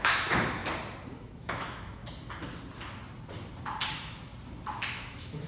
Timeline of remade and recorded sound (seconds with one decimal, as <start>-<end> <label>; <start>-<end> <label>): 0.0-0.6 remade; 0.6-1.2 recorded; 1.2-2.0 remade; 2.0-3.9 recorded; 3.9-4.3 remade; 4.3-4.9 recorded; 4.9-5.5 remade